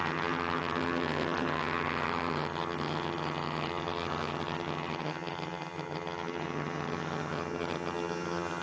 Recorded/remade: remade